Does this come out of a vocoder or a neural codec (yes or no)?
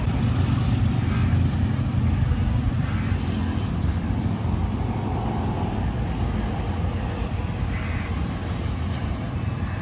no